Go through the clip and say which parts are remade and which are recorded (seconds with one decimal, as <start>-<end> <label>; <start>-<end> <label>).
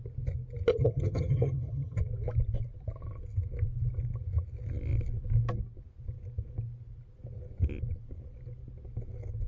0.0-0.7 recorded; 0.7-2.0 remade; 2.0-9.5 recorded